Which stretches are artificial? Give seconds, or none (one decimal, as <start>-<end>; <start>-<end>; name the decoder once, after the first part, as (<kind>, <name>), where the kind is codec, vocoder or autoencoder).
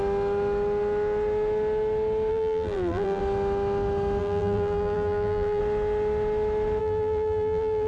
2.3-3.2 (vocoder, BigVGAN v2); 4.2-5.6; 6.8-7.9